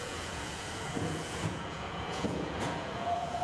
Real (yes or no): no